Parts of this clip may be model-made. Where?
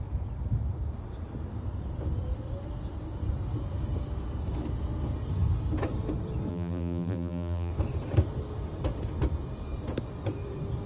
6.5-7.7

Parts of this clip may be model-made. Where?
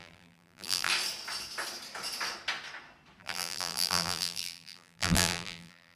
0.0-0.9; 3.2-6.0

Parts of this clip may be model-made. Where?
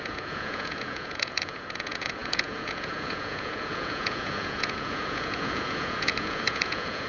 0.0-7.1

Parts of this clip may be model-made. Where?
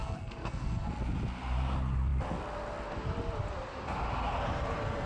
0.0-0.9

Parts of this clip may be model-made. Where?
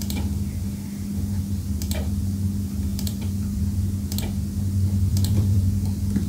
2.9-3.6; 5.1-5.6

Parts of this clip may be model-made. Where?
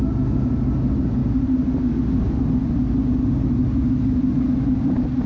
none